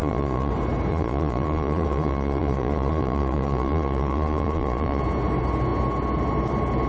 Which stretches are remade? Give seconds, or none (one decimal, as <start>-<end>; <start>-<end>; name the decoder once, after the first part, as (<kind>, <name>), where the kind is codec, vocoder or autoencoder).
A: 0.0-0.5 (vocoder, Vocos); 0.9-5.0